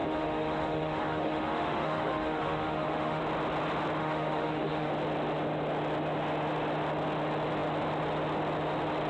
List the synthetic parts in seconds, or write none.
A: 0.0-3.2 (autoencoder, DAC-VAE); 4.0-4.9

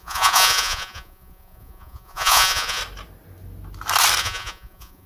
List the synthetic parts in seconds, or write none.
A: 0.0-2.8 (vocoder, Vocos); 4.2-5.1

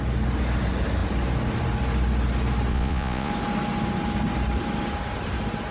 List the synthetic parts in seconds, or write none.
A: 2.7-3.3 (vocoder, Vocos)

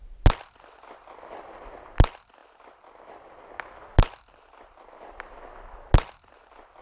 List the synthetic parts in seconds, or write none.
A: none

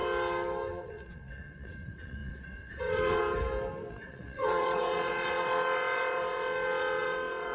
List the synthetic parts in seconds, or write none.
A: 0.7-3.2 (vocoder, WaveNeXt); 3.9-7.5

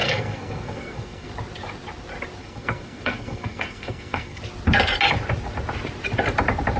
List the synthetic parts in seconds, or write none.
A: 0.0-1.3 (codec, SNAC); 2.4-4.4